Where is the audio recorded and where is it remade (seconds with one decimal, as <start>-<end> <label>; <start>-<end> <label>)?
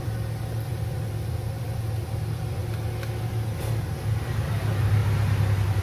0.0-2.6 remade; 2.6-3.7 recorded; 3.7-5.0 remade; 5.0-5.8 recorded